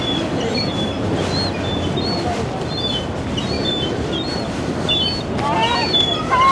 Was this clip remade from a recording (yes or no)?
no